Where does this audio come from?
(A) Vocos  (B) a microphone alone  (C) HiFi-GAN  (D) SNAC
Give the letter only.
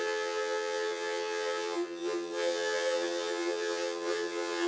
C